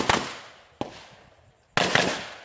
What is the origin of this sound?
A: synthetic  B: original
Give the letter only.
B